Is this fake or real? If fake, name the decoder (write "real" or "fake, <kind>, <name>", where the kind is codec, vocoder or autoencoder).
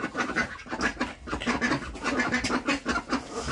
real